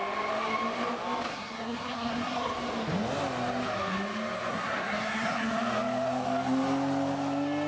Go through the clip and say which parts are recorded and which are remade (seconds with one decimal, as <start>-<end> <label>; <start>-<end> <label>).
0.0-1.3 recorded; 1.3-2.5 remade; 2.5-4.5 recorded; 4.5-5.6 remade; 5.6-7.7 recorded